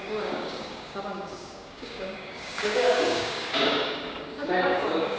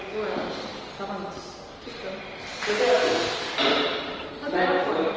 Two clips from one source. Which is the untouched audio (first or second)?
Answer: second